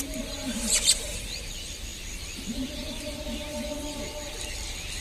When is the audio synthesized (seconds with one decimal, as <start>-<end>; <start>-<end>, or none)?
0.4-1.2